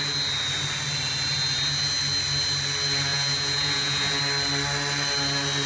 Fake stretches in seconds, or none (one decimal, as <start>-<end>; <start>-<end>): 3.1-4.2